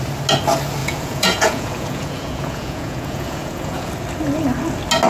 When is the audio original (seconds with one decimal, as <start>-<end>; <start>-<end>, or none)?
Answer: 0.0-0.8; 3.9-5.1

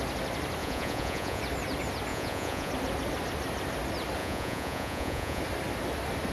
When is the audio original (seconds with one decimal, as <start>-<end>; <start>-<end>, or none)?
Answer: 0.0-0.6; 1.4-2.1; 2.7-4.2; 5.4-6.3

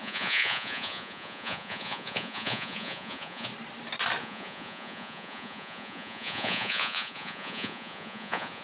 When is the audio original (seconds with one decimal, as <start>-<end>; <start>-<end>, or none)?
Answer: 3.5-4.2

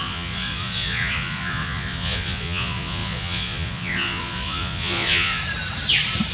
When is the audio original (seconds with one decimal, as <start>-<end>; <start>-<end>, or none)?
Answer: 5.4-6.3

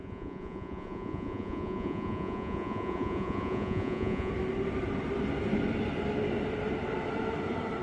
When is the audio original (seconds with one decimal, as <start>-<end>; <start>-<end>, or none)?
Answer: 4.3-7.8